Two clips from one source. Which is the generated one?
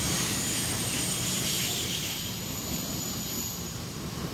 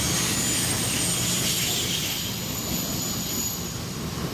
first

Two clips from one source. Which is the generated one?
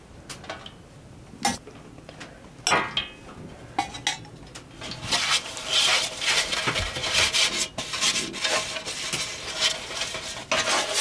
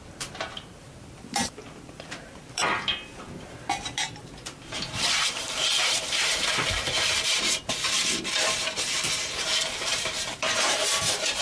second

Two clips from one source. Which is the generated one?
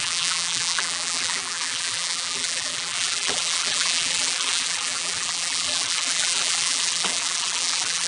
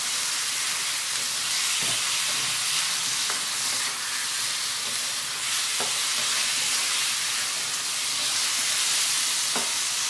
first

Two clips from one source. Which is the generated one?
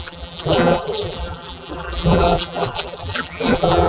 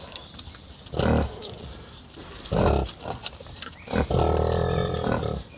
first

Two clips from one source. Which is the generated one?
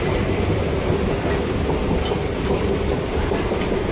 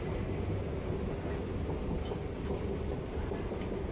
first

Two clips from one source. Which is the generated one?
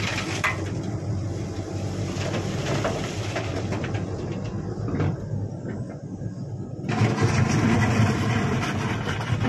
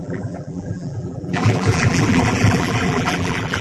second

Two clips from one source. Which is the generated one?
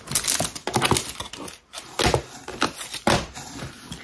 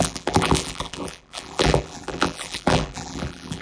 second